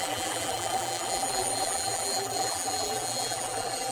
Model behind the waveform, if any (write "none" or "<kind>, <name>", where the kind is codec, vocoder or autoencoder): vocoder, BigVGAN v2